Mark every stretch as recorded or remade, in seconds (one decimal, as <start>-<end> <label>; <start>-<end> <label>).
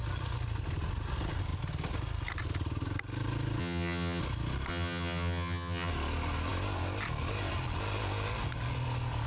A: 0.0-3.6 recorded; 3.6-4.2 remade; 4.2-4.7 recorded; 4.7-5.9 remade; 5.9-9.3 recorded